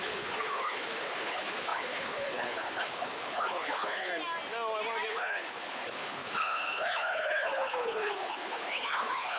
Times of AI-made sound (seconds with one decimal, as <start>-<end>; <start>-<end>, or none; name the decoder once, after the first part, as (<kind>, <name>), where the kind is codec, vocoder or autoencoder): 0.0-4.1 (codec, HILCodec); 5.1-9.4